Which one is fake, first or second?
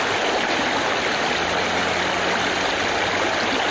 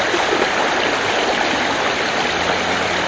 second